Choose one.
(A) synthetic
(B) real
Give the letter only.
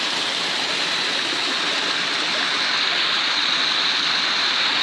B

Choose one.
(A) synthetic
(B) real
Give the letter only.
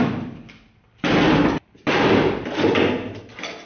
B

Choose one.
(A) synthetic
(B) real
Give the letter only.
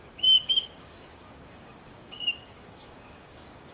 A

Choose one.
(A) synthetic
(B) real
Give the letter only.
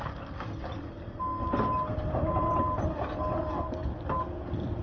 B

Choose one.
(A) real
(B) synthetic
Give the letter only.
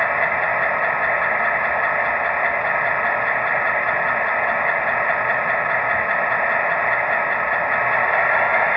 A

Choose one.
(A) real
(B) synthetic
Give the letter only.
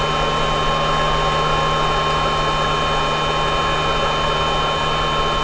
A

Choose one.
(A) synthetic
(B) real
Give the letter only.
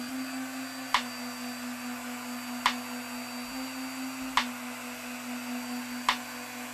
B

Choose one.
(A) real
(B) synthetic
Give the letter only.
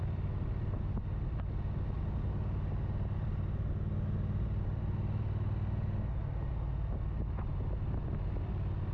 A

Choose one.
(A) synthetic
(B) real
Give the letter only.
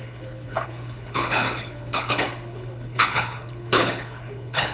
A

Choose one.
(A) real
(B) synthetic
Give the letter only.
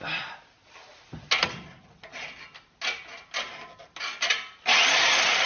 A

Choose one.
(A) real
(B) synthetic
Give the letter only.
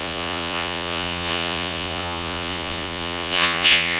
B